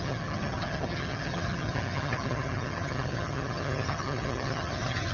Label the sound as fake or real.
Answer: fake